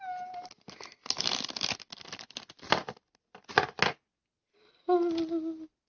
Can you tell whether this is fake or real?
real